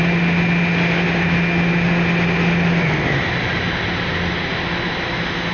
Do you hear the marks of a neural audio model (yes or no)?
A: no